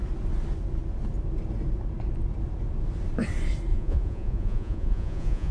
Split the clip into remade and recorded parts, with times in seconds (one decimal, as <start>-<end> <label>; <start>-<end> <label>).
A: 0.0-3.7 recorded; 3.7-5.5 remade